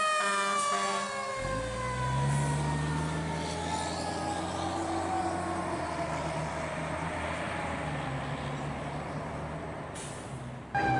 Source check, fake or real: real